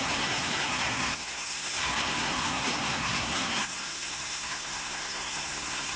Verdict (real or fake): fake